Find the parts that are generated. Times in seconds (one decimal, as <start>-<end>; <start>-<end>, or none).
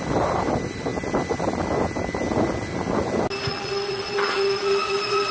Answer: 3.5-5.3